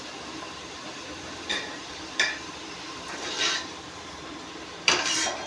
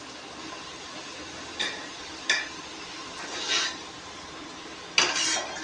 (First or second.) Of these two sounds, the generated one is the first